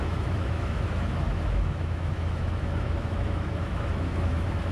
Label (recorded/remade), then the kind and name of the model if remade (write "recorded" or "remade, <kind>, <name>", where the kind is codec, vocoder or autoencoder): remade, autoencoder, DAC-VAE